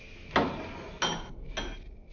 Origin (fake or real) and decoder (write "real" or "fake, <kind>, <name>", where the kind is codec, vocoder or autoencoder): real